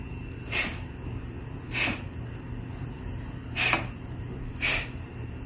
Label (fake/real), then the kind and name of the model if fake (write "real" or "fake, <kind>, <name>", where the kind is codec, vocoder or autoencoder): fake, vocoder, BigVGAN v2